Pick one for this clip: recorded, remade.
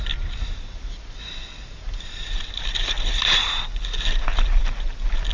recorded